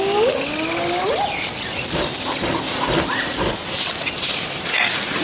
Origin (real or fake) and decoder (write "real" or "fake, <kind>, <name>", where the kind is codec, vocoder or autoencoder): real